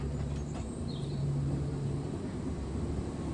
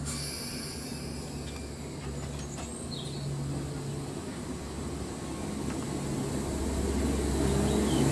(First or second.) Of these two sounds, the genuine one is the second